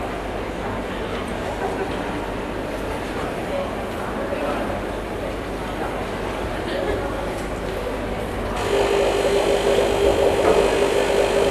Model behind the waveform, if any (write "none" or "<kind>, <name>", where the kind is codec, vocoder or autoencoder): none